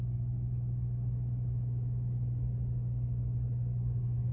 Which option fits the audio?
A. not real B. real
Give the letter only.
A